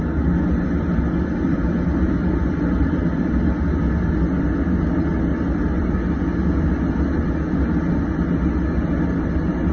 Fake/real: real